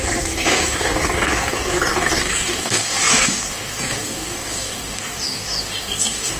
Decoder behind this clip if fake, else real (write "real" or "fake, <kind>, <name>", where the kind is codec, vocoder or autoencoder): fake, codec, DAC